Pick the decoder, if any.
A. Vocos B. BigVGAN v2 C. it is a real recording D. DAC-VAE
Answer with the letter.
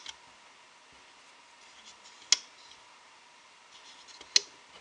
C